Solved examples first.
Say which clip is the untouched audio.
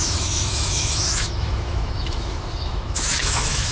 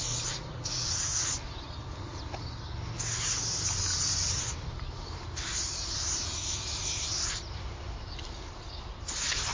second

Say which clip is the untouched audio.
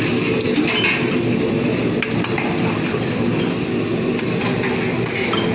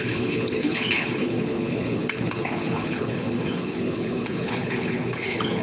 first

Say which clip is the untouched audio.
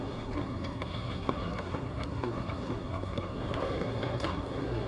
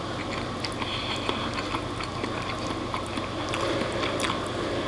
second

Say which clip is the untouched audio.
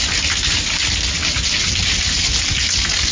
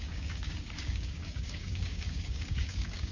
first